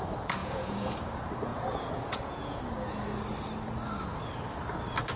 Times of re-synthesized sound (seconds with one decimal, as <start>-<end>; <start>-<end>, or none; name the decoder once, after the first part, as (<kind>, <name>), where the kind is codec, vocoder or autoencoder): 0.4-1.0 (vocoder, Vocos); 1.5-2.6